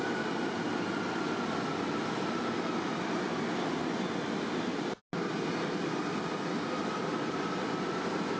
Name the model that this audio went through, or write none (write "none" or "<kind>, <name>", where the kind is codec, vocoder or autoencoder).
none